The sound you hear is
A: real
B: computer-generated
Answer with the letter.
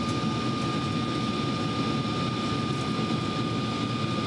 A